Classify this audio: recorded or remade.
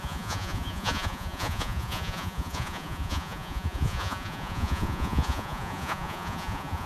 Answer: remade